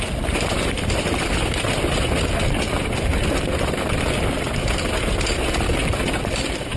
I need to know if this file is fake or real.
real